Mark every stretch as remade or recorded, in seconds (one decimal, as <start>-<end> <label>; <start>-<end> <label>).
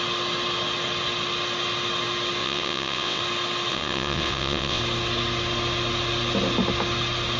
0.0-2.4 recorded; 2.4-3.2 remade; 3.2-3.7 recorded; 3.7-4.8 remade; 4.8-7.4 recorded